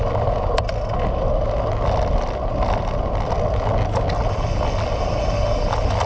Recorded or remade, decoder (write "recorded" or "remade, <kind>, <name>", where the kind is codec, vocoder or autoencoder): recorded